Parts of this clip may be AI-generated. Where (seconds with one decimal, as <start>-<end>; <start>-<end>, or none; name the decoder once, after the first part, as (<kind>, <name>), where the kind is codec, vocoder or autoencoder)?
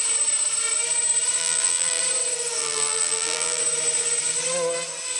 1.4-2.0 (vocoder, BigVGAN v2); 2.6-3.6